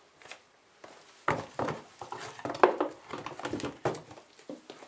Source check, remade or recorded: recorded